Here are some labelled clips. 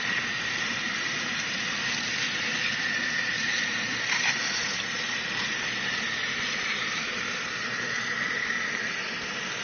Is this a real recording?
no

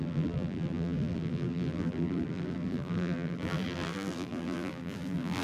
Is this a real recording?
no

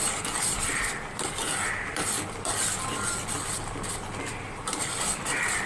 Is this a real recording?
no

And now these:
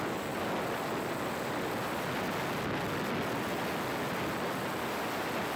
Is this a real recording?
yes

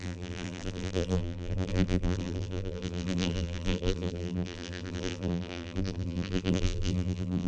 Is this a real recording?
no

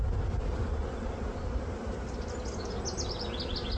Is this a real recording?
yes